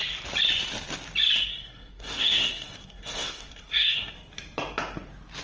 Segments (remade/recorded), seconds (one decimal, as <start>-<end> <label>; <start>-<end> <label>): 0.0-1.5 recorded; 1.5-4.1 remade; 4.1-5.4 recorded